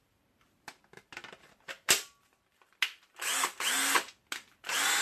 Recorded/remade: recorded